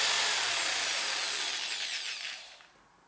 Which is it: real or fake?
real